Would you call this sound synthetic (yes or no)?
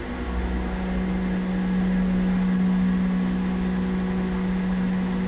no